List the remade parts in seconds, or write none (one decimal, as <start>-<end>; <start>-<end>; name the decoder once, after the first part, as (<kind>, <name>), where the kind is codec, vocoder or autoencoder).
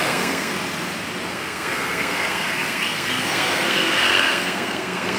0.0-0.5 (codec, SNAC); 1.3-5.2